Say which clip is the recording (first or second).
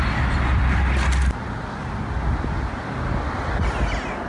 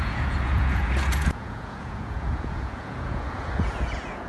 first